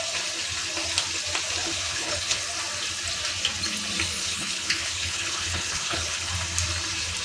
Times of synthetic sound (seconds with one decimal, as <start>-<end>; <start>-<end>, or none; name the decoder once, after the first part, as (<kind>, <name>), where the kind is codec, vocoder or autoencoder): 1.6-2.4 (codec, HILCodec); 4.2-6.3